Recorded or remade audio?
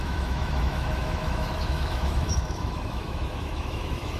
remade